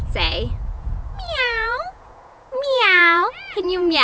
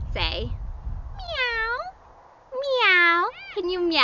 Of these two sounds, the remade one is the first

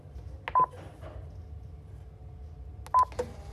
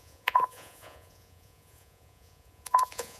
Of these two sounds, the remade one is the second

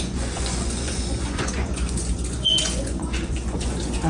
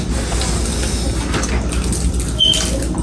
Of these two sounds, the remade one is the first